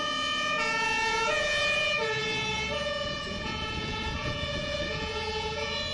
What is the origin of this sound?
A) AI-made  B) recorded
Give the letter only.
A